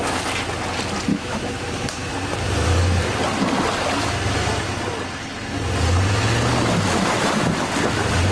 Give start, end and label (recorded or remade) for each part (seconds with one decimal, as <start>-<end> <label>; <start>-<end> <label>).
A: 0.0-1.1 recorded; 1.1-2.1 remade; 2.1-8.3 recorded